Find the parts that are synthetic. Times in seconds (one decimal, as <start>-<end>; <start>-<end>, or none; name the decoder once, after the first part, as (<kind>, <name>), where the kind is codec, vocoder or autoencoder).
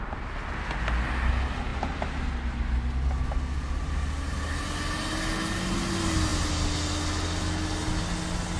none